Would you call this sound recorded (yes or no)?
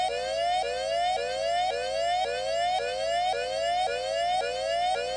yes